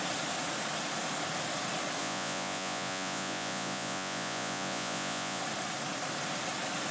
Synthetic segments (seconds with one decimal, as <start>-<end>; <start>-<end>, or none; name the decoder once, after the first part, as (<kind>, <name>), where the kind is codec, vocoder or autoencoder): 2.0-5.4 (vocoder, Vocos)